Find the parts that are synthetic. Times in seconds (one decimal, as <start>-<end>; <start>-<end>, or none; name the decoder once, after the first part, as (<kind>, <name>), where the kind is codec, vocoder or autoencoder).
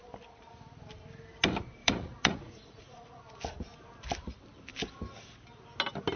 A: 1.8-3.2 (vocoder, Vocos)